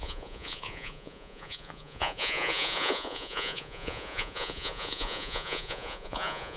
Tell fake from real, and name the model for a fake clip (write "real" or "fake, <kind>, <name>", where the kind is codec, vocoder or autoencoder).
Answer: fake, vocoder, Vocos